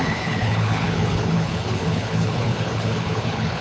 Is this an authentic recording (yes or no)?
no